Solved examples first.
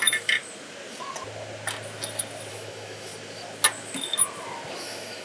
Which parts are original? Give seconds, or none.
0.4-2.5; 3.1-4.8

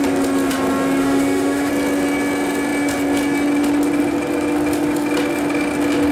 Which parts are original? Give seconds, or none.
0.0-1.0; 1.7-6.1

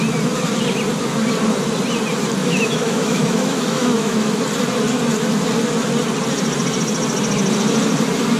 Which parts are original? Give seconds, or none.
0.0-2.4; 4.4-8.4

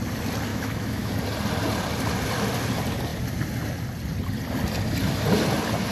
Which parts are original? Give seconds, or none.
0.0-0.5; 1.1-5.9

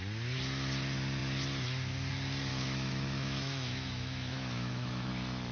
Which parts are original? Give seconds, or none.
0.0-2.5; 5.1-5.5